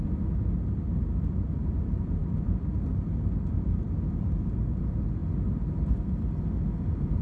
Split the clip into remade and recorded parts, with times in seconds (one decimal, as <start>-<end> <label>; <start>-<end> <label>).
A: 0.0-7.2 recorded